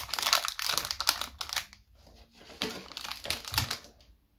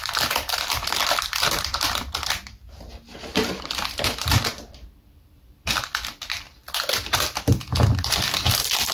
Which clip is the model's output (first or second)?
second